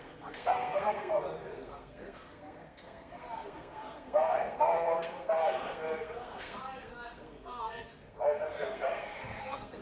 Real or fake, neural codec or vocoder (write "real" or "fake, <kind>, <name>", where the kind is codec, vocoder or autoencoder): fake, codec, SNAC